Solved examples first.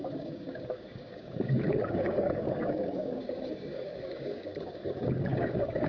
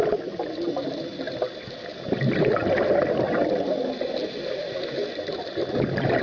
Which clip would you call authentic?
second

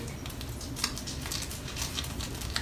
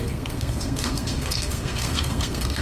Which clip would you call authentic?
first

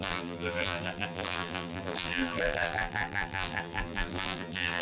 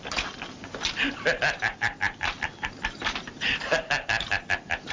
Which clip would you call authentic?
second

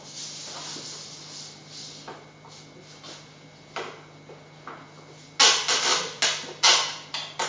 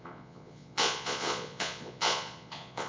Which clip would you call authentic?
first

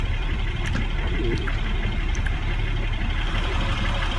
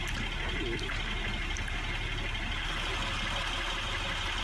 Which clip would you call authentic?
second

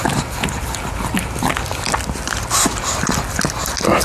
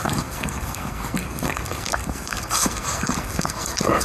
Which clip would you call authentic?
first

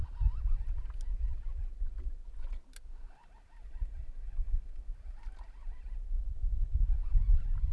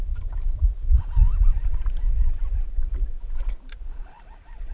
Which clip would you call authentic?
first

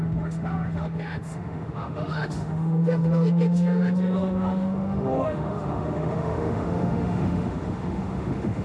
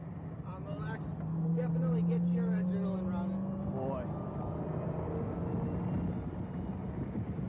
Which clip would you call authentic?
second